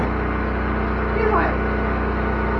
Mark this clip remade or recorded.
recorded